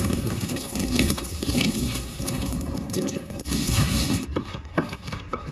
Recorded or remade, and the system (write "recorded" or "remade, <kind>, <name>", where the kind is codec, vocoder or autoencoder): remade, codec, SNAC